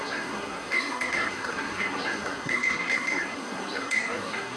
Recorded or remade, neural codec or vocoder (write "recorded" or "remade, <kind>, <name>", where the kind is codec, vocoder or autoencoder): remade, codec, SNAC